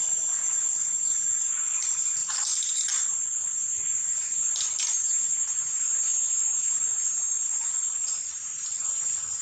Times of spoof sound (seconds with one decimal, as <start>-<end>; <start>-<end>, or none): none